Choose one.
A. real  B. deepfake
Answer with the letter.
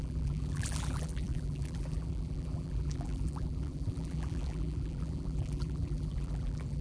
B